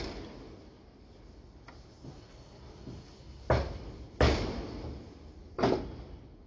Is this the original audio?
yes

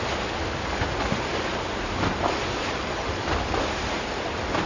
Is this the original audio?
yes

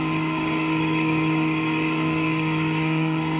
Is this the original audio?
no